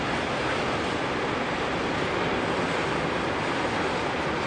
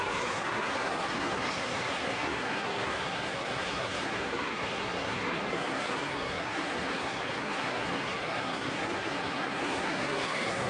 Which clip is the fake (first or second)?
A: second